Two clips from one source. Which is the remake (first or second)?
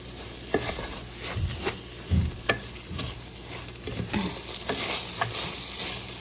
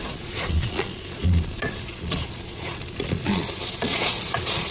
second